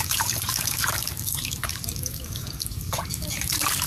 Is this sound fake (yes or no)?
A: yes